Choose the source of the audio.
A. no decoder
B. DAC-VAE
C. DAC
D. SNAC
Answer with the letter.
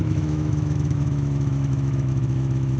B